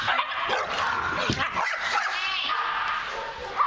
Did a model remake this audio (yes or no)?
no